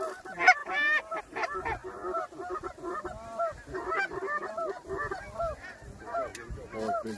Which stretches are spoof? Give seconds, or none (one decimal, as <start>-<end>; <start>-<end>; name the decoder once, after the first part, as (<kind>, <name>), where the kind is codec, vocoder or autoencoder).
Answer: none